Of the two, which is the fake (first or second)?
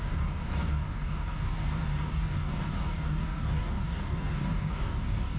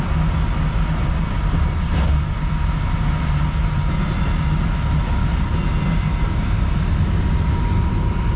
first